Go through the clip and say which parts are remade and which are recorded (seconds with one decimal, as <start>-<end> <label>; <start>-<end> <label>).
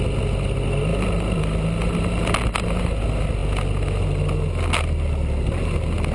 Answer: 0.0-6.1 recorded